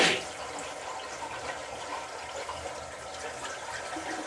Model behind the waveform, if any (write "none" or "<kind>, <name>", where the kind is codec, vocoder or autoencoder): none